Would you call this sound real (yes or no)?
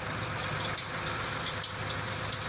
yes